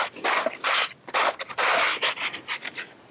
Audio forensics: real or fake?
real